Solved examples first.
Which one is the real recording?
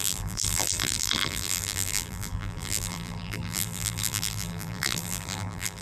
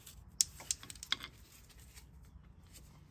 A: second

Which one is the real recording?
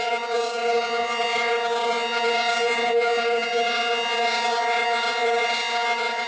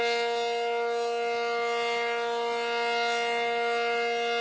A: second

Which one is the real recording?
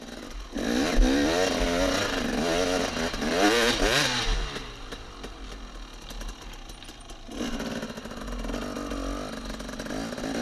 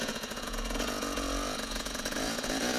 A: first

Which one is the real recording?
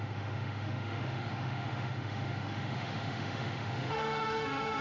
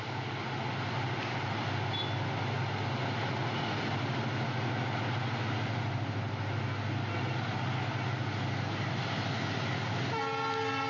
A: second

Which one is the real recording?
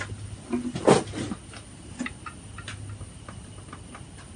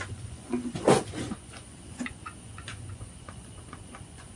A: first